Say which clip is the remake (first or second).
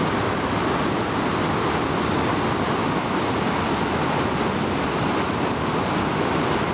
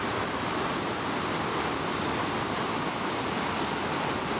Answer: second